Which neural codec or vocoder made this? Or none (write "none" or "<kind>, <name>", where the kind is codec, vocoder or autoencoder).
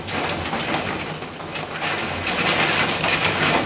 none